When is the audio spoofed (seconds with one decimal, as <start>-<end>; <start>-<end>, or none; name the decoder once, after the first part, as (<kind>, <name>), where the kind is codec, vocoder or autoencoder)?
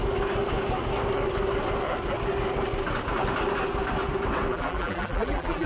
4.5-5.7 (vocoder, BigVGAN v2)